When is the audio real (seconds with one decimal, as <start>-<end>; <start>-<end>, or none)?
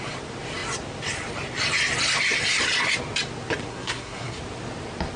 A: 0.0-3.7; 4.4-5.2